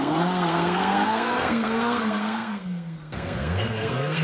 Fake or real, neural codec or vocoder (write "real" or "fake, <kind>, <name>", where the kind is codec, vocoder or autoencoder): fake, codec, SNAC